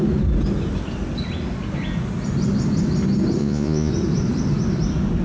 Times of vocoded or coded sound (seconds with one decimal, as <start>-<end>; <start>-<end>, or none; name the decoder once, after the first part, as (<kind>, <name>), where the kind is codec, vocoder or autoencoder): 3.4-3.9 (vocoder, Vocos)